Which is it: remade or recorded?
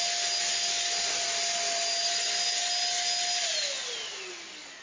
recorded